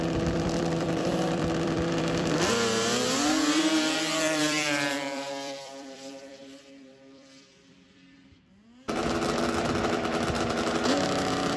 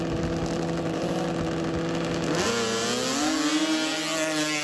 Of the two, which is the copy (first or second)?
first